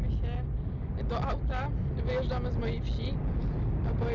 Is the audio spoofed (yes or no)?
no